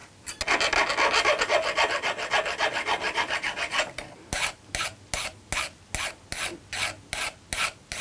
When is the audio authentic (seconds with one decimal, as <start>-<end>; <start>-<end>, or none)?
0.0-8.0